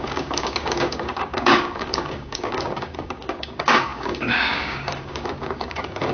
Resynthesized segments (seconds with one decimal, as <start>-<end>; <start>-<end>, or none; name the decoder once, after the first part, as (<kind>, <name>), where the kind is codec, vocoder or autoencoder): 0.0-6.1 (codec, DAC)